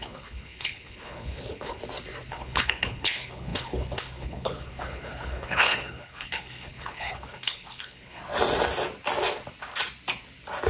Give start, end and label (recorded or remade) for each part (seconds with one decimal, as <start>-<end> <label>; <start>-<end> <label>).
0.0-1.8 remade; 1.8-2.3 recorded; 2.3-8.2 remade; 8.2-10.7 recorded